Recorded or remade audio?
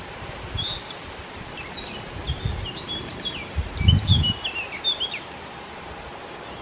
recorded